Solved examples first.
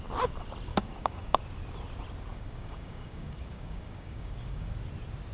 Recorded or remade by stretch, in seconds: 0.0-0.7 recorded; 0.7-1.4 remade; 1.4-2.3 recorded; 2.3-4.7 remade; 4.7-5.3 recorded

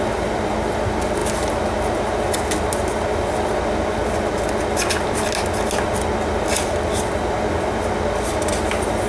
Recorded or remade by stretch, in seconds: 0.0-9.1 recorded

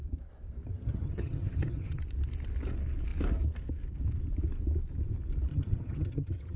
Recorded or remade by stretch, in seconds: 0.0-0.7 recorded; 0.7-2.0 remade; 2.0-5.5 recorded; 5.5-6.6 remade

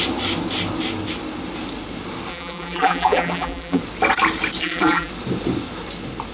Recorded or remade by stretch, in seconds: 0.0-2.3 recorded; 2.3-3.8 remade; 3.8-4.6 recorded; 4.6-5.1 remade; 5.1-6.3 recorded